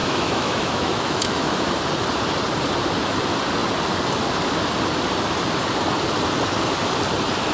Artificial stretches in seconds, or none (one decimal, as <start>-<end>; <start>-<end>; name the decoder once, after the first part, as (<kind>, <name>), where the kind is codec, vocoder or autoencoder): 0.0-1.7 (autoencoder, DAC-VAE)